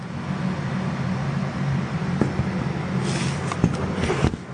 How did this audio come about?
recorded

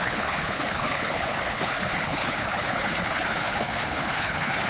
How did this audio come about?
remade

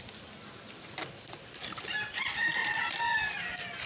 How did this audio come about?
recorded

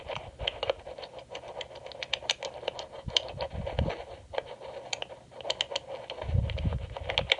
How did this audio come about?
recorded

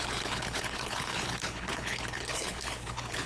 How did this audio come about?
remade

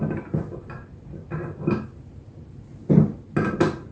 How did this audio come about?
recorded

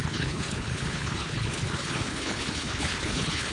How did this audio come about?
remade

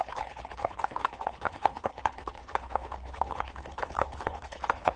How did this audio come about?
remade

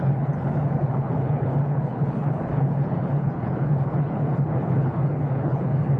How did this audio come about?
remade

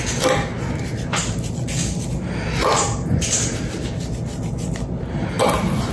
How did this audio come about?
recorded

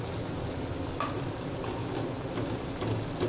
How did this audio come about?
recorded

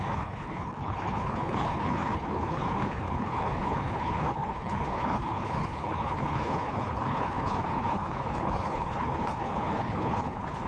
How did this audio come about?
remade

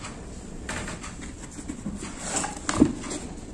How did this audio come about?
recorded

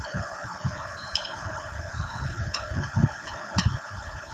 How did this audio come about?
remade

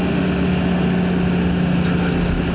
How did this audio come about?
recorded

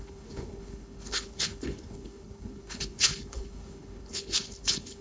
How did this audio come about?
remade